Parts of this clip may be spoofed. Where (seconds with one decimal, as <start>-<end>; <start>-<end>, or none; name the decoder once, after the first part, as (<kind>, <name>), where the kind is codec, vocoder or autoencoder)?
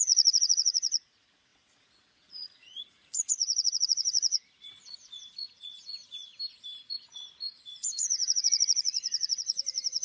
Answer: 0.0-6.3 (vocoder, Vocos); 6.9-10.0